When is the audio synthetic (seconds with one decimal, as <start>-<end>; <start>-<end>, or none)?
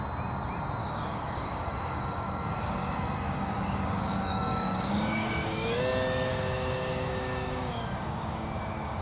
0.8-5.8; 6.3-9.0